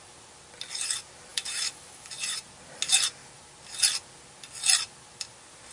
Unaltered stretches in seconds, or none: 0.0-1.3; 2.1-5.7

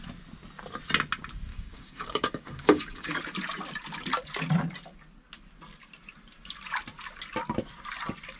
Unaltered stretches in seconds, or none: 0.0-1.5; 3.2-8.4

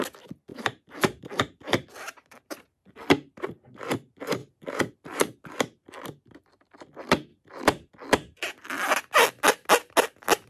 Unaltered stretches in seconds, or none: 0.0-0.5; 2.9-4.4; 5.6-7.3; 7.9-10.5

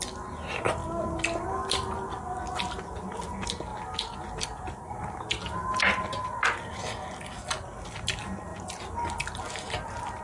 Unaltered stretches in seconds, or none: 0.0-10.2

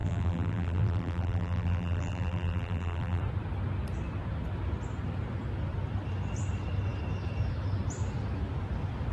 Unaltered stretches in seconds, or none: 3.2-9.1